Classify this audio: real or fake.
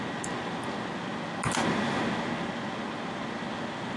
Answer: real